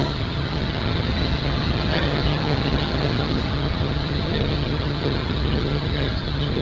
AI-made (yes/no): yes